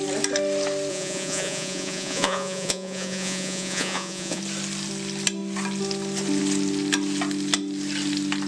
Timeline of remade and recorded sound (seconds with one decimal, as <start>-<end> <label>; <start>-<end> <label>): 0.0-0.9 recorded; 0.9-4.4 remade; 4.4-8.5 recorded